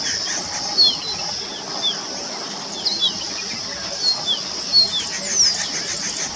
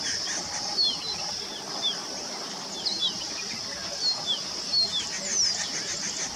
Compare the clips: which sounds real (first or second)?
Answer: first